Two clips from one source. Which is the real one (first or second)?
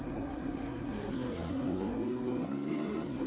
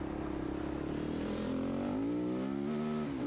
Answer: second